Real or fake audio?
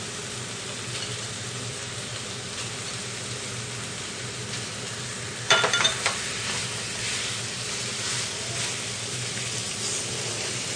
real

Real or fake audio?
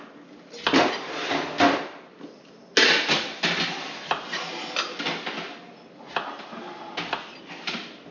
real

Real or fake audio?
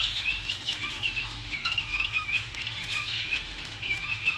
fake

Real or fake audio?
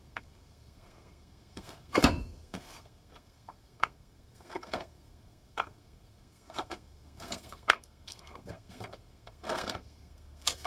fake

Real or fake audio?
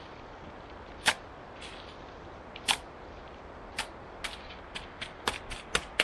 real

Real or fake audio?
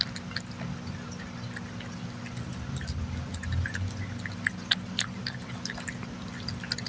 real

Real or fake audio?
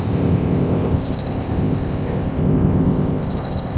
fake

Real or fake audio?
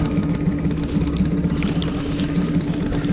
real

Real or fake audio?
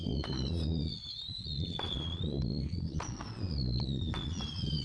fake